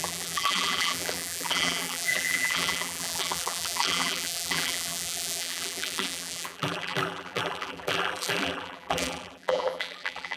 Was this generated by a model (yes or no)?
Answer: yes